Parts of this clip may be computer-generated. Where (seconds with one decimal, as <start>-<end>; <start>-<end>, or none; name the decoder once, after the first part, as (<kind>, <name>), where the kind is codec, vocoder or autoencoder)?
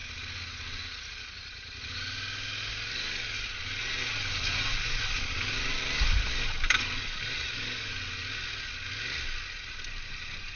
none